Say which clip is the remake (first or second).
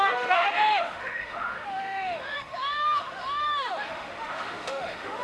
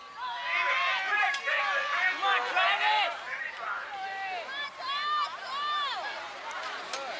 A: first